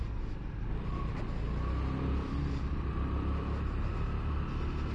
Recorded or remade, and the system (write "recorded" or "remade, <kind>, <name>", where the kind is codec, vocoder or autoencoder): recorded